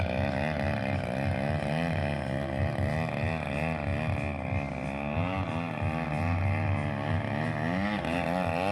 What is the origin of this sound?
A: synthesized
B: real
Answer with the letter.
B